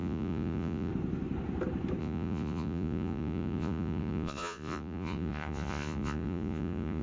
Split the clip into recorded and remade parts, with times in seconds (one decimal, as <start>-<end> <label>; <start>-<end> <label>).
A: 0.0-0.9 remade; 0.9-2.0 recorded; 2.0-7.0 remade